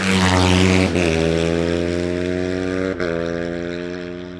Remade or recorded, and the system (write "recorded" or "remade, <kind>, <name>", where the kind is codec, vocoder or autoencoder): recorded